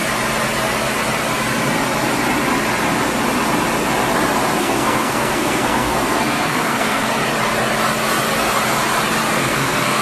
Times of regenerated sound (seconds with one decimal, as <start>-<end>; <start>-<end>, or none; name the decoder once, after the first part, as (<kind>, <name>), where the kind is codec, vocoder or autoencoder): 4.6-7.2 (codec, SNAC); 9.3-10.0